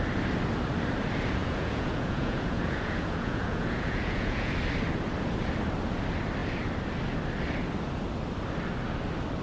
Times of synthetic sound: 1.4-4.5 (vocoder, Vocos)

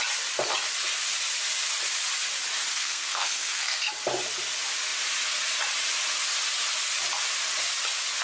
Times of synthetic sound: 2.7-3.9 (codec, SNAC)

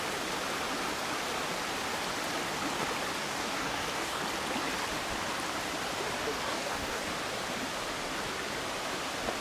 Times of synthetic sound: 3.2-4.2 (codec, DAC); 6.2-7.0

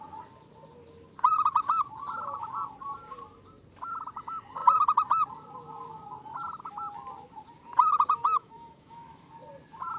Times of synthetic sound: 8.2-9.3 (autoencoder, DAC-VAE)

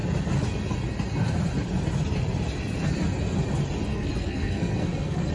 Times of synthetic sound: 3.9-5.3 (codec, SNAC)

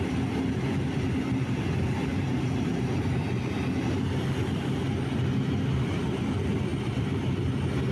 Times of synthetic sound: 2.1-3.2 (vocoder, BigVGAN v2)